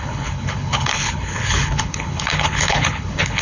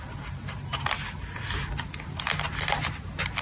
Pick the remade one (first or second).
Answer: first